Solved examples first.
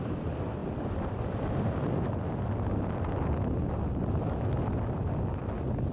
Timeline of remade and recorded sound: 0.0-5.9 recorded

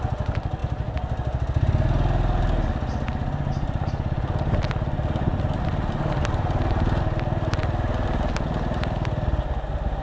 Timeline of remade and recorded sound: 0.0-10.0 recorded